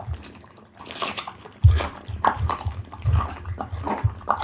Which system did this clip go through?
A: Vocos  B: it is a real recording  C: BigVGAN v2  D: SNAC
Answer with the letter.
B